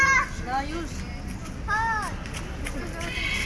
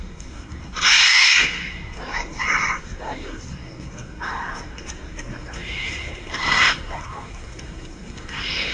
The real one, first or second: first